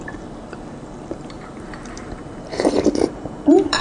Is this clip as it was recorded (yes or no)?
no